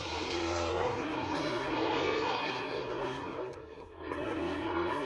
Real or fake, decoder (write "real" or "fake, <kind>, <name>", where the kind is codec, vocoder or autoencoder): fake, codec, SNAC